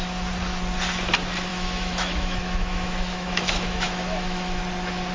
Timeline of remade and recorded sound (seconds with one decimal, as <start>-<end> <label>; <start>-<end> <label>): 0.0-1.5 recorded; 1.5-4.6 remade; 4.6-5.1 recorded